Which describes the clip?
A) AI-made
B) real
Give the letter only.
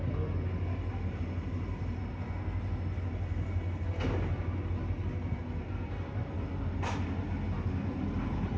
B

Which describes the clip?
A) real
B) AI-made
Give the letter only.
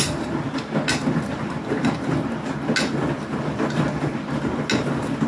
A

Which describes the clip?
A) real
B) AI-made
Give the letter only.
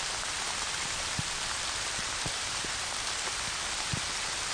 B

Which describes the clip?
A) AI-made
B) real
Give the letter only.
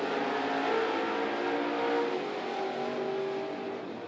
B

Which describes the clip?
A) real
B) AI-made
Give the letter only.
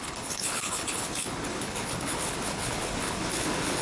B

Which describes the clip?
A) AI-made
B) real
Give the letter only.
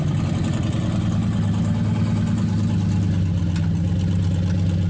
B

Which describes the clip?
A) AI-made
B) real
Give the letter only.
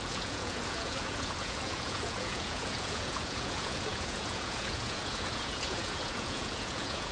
A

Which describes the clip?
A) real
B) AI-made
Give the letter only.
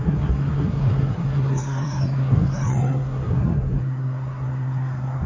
B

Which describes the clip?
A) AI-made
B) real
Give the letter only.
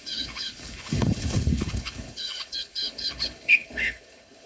A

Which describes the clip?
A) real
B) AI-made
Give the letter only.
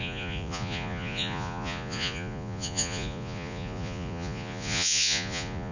B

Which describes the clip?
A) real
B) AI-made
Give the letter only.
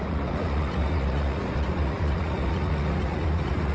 B